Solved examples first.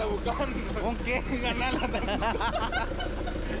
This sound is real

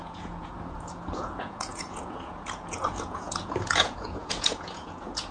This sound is fake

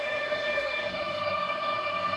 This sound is fake